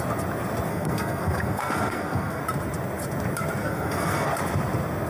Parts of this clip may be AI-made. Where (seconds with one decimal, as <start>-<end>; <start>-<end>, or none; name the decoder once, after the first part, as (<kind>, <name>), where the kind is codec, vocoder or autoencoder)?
0.7-2.4 (codec, SNAC); 3.6-4.3